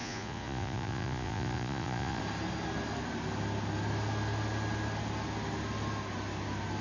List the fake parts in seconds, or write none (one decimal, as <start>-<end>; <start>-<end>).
0.0-2.2